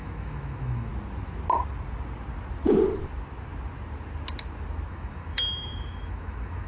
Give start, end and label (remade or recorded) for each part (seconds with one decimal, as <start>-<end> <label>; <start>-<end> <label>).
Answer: 0.0-0.9 remade; 0.9-4.9 recorded; 4.9-6.7 remade